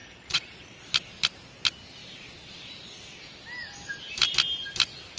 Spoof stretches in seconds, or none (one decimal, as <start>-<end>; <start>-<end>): 0.0-0.8